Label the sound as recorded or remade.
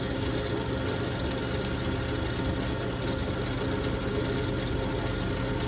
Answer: recorded